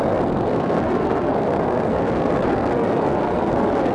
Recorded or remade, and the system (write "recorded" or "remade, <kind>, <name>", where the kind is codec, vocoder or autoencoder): remade, codec, SNAC